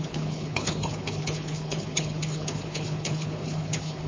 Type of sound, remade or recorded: remade